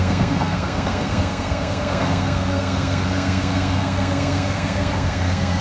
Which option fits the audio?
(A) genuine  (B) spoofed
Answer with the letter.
B